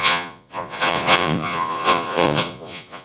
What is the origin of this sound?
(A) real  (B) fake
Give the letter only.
B